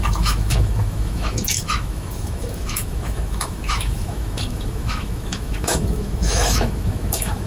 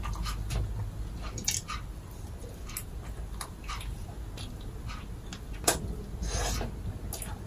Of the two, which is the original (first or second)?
second